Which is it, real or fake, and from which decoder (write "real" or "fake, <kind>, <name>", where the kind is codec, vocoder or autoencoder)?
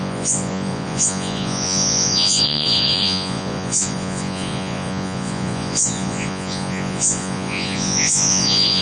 fake, vocoder, Vocos